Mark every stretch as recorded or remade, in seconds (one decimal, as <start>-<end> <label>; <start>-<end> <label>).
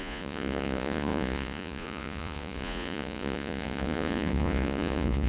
0.0-5.3 remade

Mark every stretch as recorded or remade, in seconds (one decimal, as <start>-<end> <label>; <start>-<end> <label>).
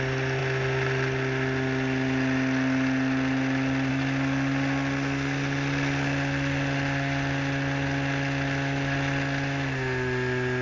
0.0-10.6 recorded